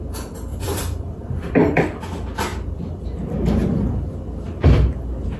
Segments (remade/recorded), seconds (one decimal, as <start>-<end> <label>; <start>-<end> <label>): 0.0-0.5 recorded; 0.5-1.8 remade; 1.8-2.5 recorded; 2.5-3.9 remade; 3.9-5.4 recorded